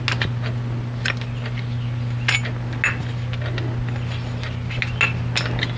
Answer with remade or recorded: recorded